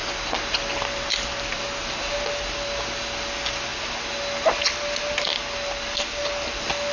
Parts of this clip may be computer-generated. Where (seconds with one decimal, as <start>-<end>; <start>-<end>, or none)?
none